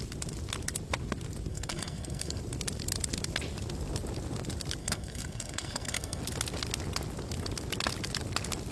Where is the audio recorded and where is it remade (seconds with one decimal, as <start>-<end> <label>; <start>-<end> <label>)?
0.0-1.5 recorded; 1.5-2.4 remade; 2.4-4.8 recorded; 4.8-6.2 remade; 6.2-8.7 recorded